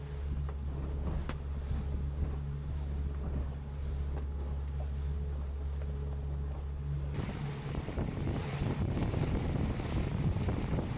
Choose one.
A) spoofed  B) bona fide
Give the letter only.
B